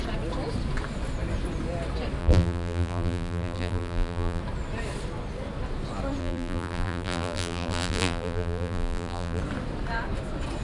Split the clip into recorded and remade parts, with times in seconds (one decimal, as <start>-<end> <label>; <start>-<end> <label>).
0.0-2.2 recorded; 2.2-4.4 remade; 4.4-6.2 recorded; 6.2-9.4 remade; 9.4-10.6 recorded